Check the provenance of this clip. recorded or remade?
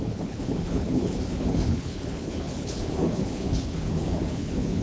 remade